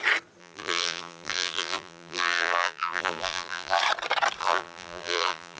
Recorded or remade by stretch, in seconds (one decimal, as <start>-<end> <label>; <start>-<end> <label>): 0.0-0.4 recorded; 0.4-3.8 remade; 3.8-4.4 recorded; 4.4-5.6 remade